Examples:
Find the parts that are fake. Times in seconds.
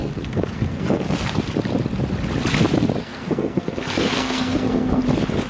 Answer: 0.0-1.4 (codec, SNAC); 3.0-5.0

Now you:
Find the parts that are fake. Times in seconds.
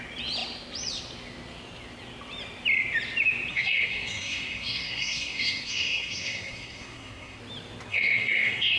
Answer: 3.5-7.4 (codec, SNAC); 7.9-8.8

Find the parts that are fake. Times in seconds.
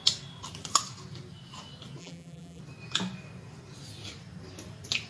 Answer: 2.0-2.6 (vocoder, BigVGAN v2)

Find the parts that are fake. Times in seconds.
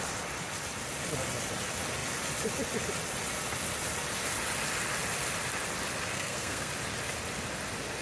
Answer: 6.1-6.7 (codec, SNAC)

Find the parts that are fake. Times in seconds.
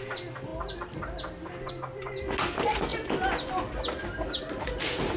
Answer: none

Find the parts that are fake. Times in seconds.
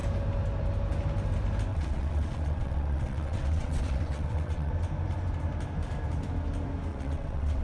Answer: 1.7-4.7 (vocoder, WaveNeXt); 6.9-7.6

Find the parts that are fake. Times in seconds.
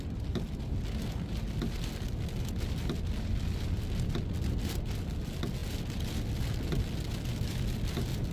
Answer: none